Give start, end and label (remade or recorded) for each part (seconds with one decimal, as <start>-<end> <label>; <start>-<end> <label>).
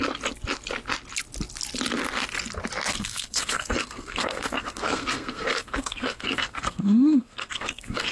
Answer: 0.0-2.9 recorded; 2.9-8.1 remade